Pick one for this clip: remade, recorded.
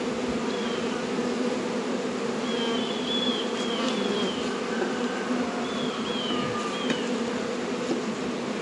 recorded